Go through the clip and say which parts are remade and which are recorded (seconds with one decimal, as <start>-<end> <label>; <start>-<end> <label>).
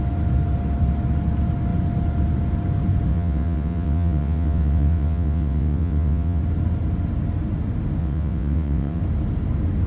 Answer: 0.0-3.1 recorded; 3.1-6.4 remade; 6.4-8.0 recorded; 8.0-9.0 remade; 9.0-9.9 recorded